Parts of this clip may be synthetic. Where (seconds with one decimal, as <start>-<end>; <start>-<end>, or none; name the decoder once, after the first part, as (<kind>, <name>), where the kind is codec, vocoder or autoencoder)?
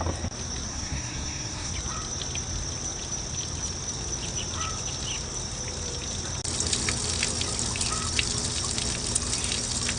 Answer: 0.7-1.7 (codec, SNAC)